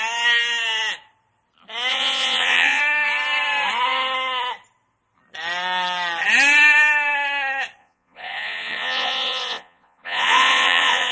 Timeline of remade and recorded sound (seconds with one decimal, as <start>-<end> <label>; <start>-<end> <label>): 0.0-1.9 recorded; 1.9-2.8 remade; 2.8-7.8 recorded; 7.8-11.1 remade